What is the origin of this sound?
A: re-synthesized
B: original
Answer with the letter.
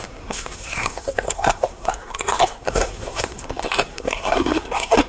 A